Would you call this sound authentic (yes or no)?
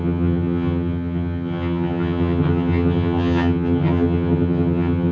no